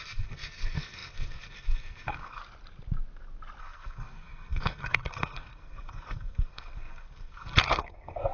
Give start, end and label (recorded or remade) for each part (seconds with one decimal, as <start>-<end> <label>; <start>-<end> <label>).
0.0-2.4 remade; 2.4-3.6 recorded; 3.6-8.3 remade

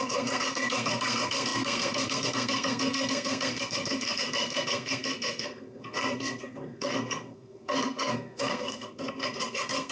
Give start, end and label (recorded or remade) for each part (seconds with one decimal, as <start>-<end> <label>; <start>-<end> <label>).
0.0-9.9 remade

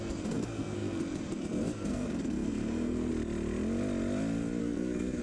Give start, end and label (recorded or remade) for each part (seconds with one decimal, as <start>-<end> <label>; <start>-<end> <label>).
0.0-3.1 remade; 3.1-4.6 recorded; 4.6-5.2 remade

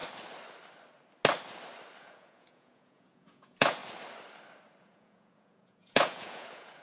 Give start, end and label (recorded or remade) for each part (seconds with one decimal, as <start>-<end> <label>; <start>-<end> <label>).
0.0-2.0 recorded; 2.0-3.8 remade; 3.8-4.8 recorded; 4.8-6.8 remade

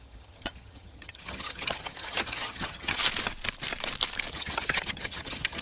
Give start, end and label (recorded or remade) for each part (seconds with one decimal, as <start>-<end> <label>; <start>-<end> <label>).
0.0-3.0 remade; 3.0-4.3 recorded; 4.3-5.6 remade

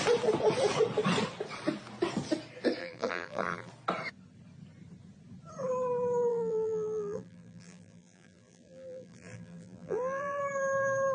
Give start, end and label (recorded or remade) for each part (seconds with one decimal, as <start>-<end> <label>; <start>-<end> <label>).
0.0-2.8 recorded; 2.8-3.7 remade; 3.7-6.3 recorded; 6.3-10.4 remade; 10.4-11.1 recorded

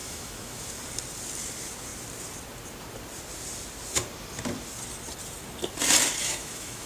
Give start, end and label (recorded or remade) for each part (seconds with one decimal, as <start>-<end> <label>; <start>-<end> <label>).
0.0-0.7 remade; 0.7-6.2 recorded; 6.2-6.9 remade